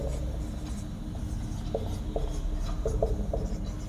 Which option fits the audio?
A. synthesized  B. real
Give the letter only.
B